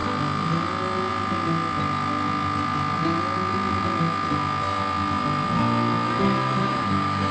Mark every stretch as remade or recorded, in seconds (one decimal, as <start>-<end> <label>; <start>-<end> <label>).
0.0-6.6 recorded; 6.6-7.3 remade